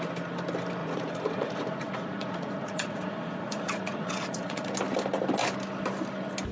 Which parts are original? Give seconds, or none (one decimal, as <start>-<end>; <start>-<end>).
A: 0.0-0.8; 4.7-6.5